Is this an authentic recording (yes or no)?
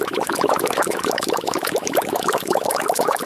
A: no